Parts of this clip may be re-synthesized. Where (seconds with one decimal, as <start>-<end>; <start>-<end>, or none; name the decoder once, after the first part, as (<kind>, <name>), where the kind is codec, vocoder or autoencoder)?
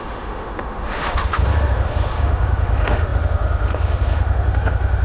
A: 0.0-5.0 (autoencoder, DAC-VAE)